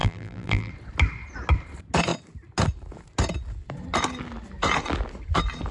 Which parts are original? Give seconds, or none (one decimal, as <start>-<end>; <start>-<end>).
0.7-5.7